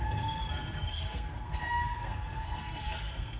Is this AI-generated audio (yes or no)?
yes